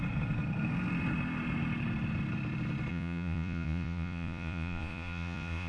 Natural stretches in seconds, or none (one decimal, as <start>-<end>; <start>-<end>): 0.0-2.9